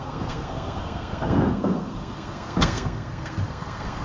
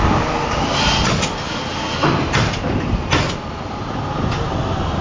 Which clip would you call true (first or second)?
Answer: second